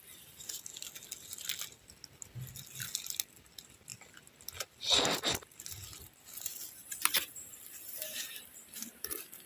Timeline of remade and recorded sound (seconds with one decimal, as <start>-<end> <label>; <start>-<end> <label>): 0.0-6.8 recorded; 6.8-9.5 remade